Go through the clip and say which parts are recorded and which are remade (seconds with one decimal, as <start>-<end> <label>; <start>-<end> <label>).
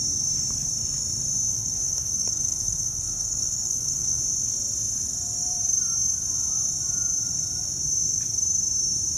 0.0-1.5 recorded; 1.5-4.2 remade; 4.2-9.2 recorded